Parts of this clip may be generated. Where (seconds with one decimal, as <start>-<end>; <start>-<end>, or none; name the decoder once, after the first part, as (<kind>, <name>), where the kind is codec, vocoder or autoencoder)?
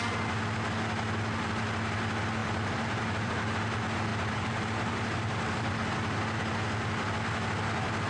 2.4-3.3 (vocoder, BigVGAN v2); 4.1-5.7